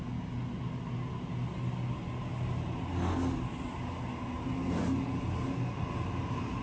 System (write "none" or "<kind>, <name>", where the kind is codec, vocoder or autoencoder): none